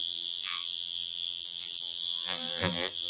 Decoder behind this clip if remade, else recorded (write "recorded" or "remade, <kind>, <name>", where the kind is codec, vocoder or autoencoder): remade, vocoder, BigVGAN v2